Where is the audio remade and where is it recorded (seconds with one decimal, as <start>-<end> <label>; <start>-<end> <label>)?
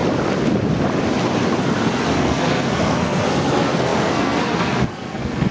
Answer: 0.0-1.6 recorded; 1.6-5.5 remade